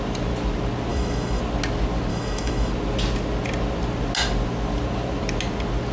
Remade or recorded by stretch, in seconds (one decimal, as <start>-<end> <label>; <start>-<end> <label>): 0.0-0.9 recorded; 0.9-1.4 remade; 1.4-2.1 recorded; 2.1-2.7 remade; 2.7-5.9 recorded